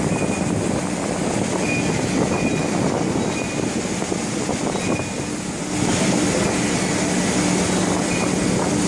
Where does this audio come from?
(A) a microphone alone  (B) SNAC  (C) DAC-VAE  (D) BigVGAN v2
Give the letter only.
A